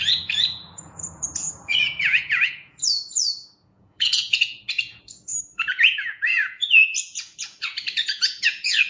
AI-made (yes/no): yes